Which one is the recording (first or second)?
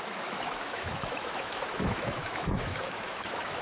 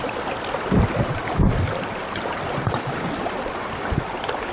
second